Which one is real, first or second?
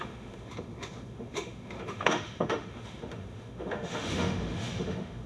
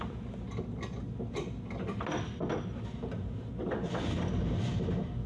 second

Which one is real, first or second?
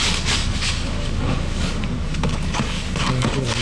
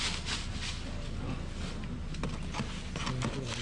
second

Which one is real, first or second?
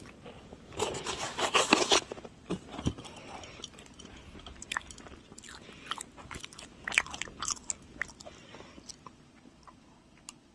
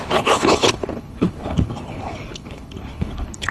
first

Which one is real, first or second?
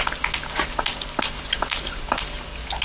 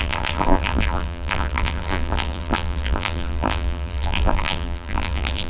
first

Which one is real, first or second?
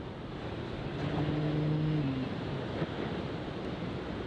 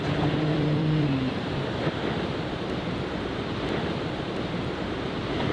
first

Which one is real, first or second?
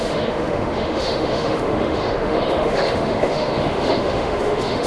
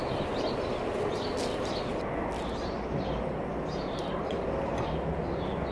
second